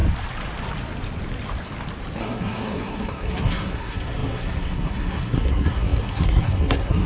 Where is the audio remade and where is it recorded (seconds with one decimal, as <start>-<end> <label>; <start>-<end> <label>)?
0.0-2.2 recorded; 2.2-7.1 remade